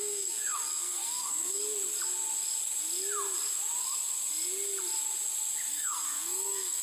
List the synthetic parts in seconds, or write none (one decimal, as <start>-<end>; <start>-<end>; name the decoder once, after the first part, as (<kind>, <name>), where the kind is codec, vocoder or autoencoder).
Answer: 0.0-1.6 (codec, SNAC); 5.7-6.8